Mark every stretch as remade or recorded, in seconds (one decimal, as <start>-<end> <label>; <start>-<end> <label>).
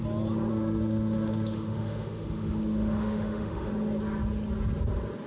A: 0.0-0.5 recorded; 0.5-3.7 remade; 3.7-5.3 recorded